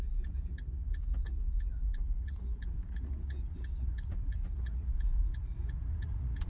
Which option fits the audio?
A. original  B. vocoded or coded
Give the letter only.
B